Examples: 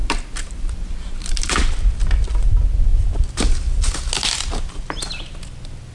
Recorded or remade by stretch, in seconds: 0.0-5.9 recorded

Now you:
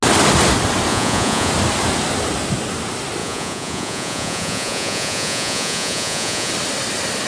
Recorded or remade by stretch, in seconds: 0.0-0.9 recorded; 0.9-1.5 remade; 1.5-3.2 recorded; 3.2-6.5 remade; 6.5-7.3 recorded

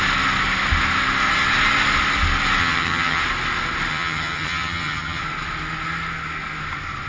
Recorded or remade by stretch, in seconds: 0.0-2.6 recorded; 2.6-3.2 remade; 3.2-3.9 recorded; 3.9-5.2 remade; 5.2-7.1 recorded

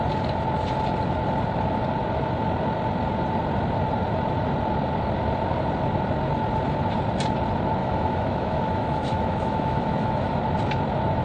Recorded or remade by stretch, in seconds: 0.0-7.8 recorded; 7.8-10.4 remade; 10.4-11.2 recorded